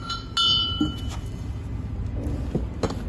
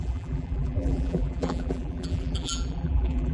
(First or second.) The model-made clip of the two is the second